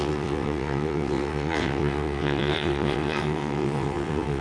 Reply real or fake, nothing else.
fake